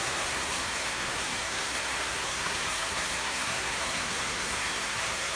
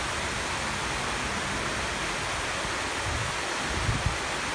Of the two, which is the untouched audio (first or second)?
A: second